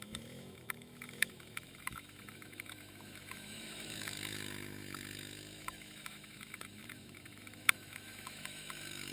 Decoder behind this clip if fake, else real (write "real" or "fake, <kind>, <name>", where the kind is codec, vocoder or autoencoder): fake, autoencoder, DAC-VAE